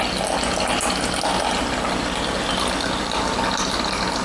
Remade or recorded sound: recorded